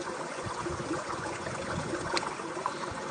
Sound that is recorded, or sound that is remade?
remade